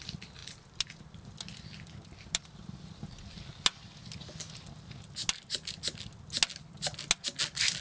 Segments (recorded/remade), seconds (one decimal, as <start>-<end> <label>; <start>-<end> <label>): 0.0-7.8 recorded